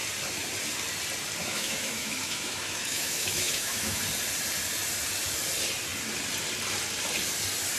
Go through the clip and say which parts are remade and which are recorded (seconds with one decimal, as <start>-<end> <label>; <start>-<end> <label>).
0.0-1.4 recorded; 1.4-4.0 remade; 4.0-7.8 recorded

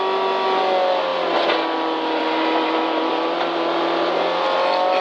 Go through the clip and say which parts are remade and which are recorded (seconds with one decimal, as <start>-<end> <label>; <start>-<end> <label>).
0.0-5.0 recorded

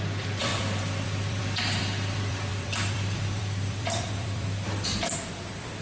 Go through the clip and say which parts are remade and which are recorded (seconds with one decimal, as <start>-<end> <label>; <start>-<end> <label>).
0.0-5.8 remade